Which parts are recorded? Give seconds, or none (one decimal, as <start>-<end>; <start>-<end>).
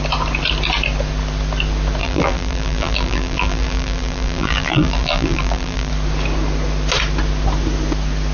0.0-2.0; 5.9-8.3